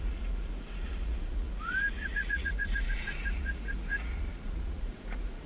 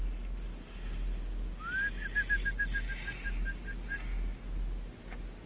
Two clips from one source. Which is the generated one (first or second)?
first